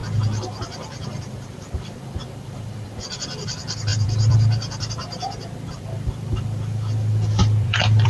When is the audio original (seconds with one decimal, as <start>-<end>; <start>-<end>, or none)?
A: 0.0-0.6

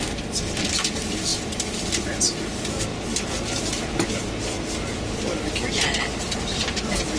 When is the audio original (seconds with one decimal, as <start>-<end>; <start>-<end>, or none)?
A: 2.9-3.6

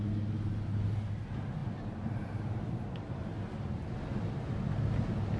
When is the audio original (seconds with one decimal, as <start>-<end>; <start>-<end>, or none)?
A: 0.0-5.4

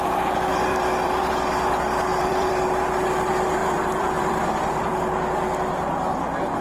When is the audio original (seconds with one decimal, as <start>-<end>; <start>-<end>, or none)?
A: 0.0-0.7; 1.3-2.1; 2.8-3.6; 4.9-6.6

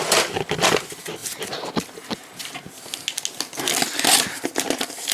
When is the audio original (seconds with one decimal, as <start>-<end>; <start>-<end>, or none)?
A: 0.0-5.1

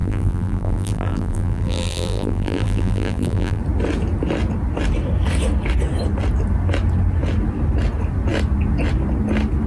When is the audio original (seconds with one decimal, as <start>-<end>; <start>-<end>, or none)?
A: 3.6-9.7

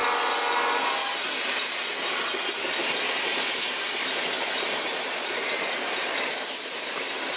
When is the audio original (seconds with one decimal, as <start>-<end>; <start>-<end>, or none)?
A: 0.0-2.6; 7.0-7.4

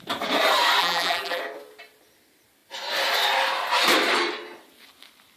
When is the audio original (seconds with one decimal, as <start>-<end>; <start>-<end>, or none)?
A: 0.0-0.8; 1.4-5.4